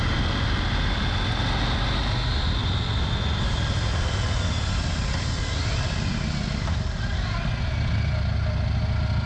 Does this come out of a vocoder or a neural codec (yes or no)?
no